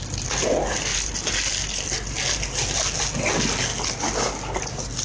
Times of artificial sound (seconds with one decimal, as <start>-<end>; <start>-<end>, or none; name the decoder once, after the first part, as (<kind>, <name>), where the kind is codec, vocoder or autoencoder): none